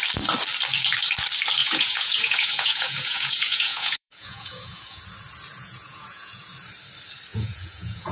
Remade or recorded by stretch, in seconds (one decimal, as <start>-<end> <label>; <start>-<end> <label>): 0.0-1.6 recorded; 1.6-5.0 remade; 5.0-5.5 recorded; 5.5-6.4 remade; 6.4-7.3 recorded; 7.3-8.1 remade